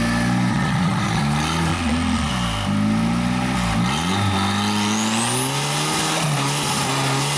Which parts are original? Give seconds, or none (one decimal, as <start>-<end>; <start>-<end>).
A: 0.0-0.5; 1.2-1.7; 2.3-7.4